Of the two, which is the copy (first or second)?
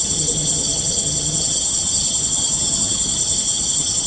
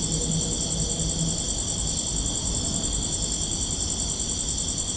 first